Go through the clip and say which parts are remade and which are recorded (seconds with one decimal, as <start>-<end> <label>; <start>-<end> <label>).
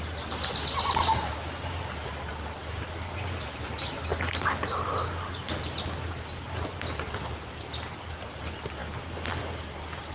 0.0-10.1 recorded